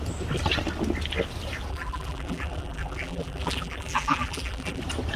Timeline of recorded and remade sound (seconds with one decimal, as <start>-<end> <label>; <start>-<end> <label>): 0.0-1.7 recorded; 1.7-4.8 remade; 4.8-5.2 recorded